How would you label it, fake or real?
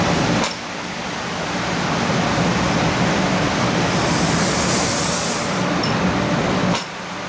fake